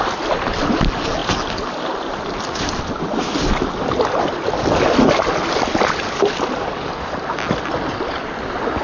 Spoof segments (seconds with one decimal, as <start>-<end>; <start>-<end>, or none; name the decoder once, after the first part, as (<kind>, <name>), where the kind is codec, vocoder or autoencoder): none